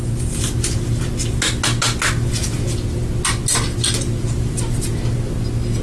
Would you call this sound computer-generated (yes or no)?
no